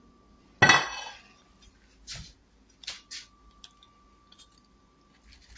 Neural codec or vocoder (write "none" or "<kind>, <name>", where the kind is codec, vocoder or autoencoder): none